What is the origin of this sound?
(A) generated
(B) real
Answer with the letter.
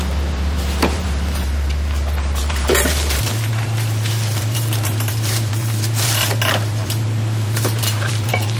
A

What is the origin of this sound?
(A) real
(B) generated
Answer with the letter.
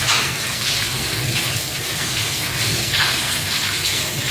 B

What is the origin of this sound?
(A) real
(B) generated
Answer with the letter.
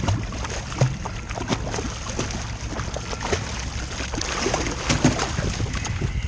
A